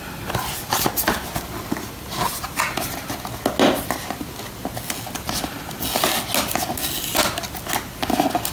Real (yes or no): yes